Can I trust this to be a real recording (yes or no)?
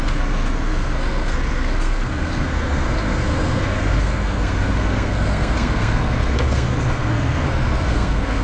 no